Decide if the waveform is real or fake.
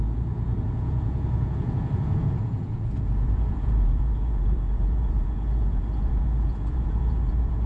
fake